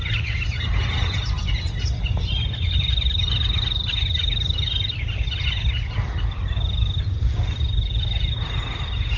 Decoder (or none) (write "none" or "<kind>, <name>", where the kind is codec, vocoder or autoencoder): none